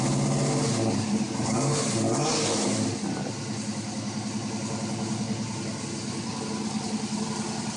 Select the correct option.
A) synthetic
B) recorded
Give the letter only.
B